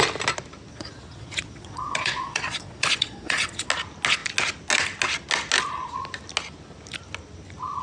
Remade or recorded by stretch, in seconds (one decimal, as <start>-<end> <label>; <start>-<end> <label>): 0.0-0.7 recorded; 0.7-3.7 remade; 3.7-7.8 recorded